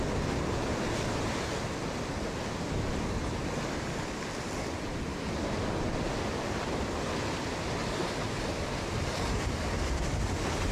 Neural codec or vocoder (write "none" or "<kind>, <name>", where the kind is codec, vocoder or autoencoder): none